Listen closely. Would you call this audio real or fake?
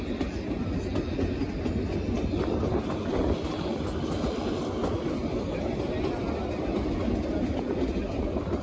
real